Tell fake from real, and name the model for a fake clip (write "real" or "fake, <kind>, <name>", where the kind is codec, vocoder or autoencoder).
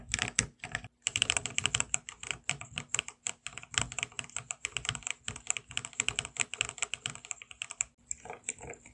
real